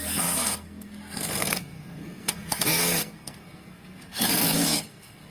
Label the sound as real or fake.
fake